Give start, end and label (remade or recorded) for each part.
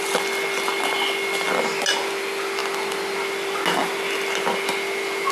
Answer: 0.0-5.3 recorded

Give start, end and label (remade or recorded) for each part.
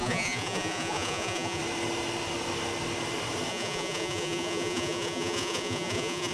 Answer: 0.0-1.6 remade; 1.6-3.5 recorded; 3.5-6.3 remade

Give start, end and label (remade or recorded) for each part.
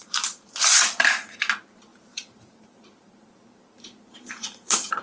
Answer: 0.0-1.1 remade; 1.1-1.9 recorded; 1.9-5.0 remade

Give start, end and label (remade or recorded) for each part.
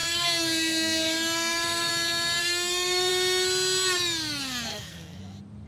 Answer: 0.0-1.9 remade; 1.9-2.4 recorded; 2.4-3.1 remade; 3.1-4.7 recorded; 4.7-5.2 remade; 5.2-5.7 recorded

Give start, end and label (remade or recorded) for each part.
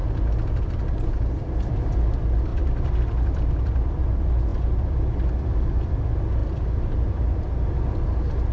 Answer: 0.0-0.6 recorded; 0.6-6.4 remade; 6.4-7.7 recorded; 7.7-8.5 remade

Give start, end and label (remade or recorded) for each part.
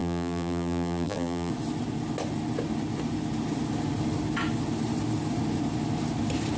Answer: 0.0-1.5 remade; 1.5-6.6 recorded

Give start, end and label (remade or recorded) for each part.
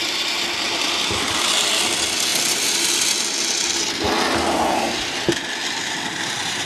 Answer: 0.0-1.5 remade; 1.5-2.3 recorded; 2.3-3.0 remade; 3.0-5.6 recorded; 5.6-6.7 remade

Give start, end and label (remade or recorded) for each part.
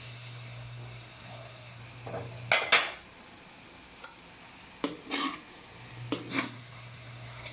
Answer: 0.0-1.8 remade; 1.8-6.3 recorded; 6.3-7.5 remade